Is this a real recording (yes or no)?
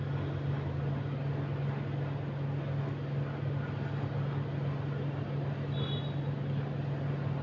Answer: yes